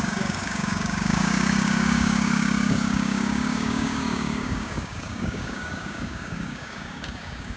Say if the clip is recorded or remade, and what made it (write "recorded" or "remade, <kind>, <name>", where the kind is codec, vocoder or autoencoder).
remade, codec, DAC